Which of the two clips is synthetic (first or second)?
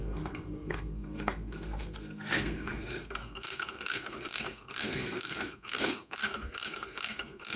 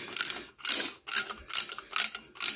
first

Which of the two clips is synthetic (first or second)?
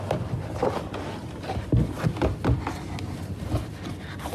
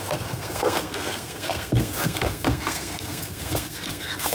second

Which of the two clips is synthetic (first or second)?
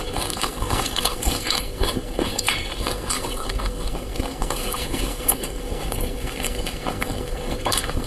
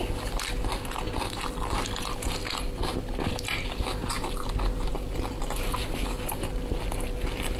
first